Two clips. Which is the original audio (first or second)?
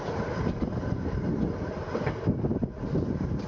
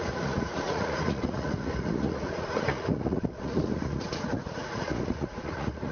first